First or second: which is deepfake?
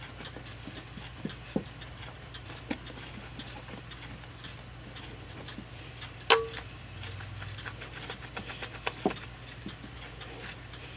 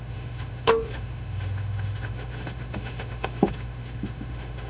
second